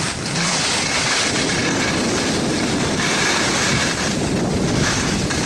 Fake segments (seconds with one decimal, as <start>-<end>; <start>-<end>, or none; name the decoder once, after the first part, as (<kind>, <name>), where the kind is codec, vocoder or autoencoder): none